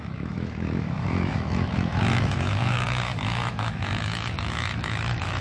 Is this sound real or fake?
fake